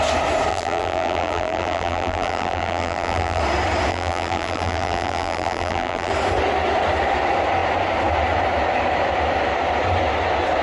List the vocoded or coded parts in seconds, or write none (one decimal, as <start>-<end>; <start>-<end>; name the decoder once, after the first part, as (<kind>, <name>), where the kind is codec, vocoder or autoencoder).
0.5-3.4 (vocoder, BigVGAN v2); 3.9-6.1